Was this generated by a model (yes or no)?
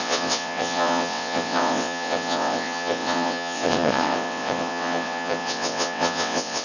yes